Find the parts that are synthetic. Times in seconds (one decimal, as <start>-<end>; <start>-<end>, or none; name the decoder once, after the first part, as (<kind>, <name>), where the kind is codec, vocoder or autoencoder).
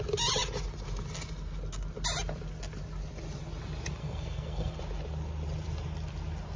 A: 4.0-4.8 (codec, SNAC)